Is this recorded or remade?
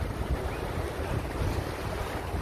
remade